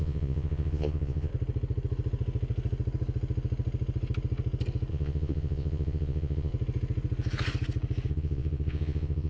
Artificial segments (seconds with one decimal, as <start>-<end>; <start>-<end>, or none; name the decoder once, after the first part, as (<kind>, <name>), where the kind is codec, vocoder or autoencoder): 0.0-1.3 (vocoder, Vocos); 4.9-6.5; 8.1-9.3